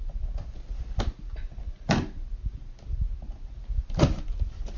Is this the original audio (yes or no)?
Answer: yes